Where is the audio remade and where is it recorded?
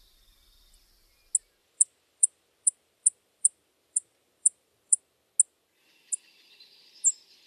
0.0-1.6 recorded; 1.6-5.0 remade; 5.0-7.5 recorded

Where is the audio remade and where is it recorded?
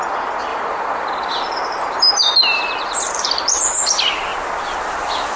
0.0-0.5 recorded; 0.5-3.1 remade; 3.1-5.4 recorded